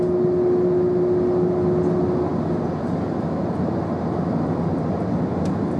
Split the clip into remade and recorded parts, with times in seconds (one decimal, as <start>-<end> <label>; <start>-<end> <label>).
0.0-5.8 recorded

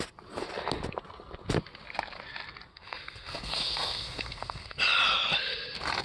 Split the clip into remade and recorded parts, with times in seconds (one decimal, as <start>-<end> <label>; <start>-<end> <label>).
0.0-2.7 recorded; 2.7-4.8 remade; 4.8-6.0 recorded